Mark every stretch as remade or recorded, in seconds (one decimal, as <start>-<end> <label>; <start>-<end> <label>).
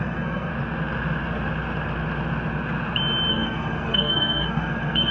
0.0-0.5 remade; 0.5-3.3 recorded; 3.3-5.1 remade